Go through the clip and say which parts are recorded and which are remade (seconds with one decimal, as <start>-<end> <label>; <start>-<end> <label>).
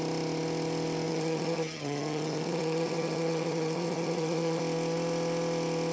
0.0-1.1 recorded; 1.1-4.6 remade; 4.6-5.9 recorded